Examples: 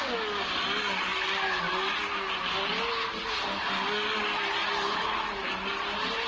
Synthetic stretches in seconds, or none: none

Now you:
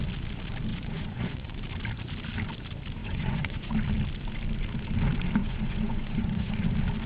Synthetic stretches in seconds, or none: 0.7-1.6 (vocoder, Vocos); 3.0-3.7; 5.4-6.5

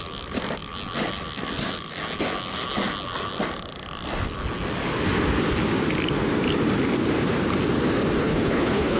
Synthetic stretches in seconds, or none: 8.2-9.0 (codec, HILCodec)

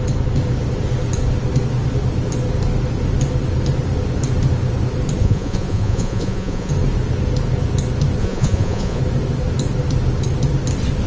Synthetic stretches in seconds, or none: 5.2-6.7 (vocoder, Vocos); 8.2-9.0